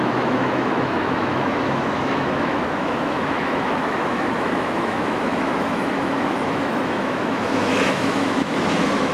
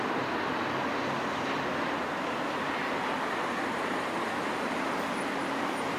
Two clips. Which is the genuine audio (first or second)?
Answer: second